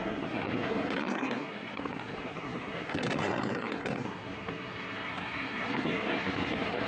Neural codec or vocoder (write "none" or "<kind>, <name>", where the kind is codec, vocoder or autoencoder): codec, SNAC